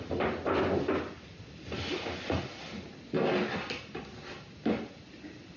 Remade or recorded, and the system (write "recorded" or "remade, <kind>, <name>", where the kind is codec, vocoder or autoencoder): recorded